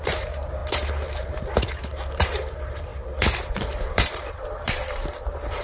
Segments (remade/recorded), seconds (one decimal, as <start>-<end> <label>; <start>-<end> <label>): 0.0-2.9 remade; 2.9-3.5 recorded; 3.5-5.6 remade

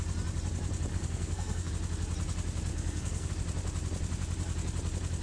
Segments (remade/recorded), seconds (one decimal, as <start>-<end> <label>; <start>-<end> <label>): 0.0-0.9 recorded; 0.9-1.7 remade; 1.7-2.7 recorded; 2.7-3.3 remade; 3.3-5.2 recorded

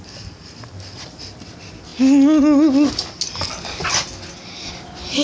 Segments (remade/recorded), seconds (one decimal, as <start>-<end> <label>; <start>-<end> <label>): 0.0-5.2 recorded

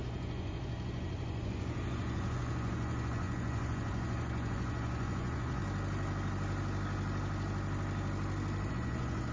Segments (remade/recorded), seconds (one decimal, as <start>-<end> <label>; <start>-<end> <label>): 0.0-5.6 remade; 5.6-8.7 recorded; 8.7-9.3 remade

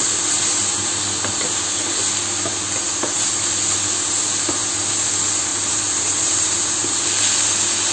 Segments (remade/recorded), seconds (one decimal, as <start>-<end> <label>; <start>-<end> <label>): 0.0-5.5 recorded; 5.5-7.0 remade; 7.0-7.9 recorded

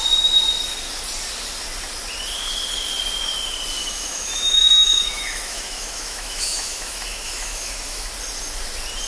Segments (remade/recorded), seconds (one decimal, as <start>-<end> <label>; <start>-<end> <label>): 0.0-3.8 recorded; 3.8-8.1 remade; 8.1-9.1 recorded